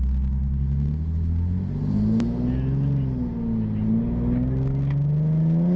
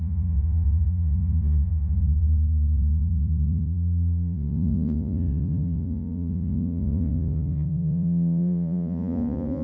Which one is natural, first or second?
first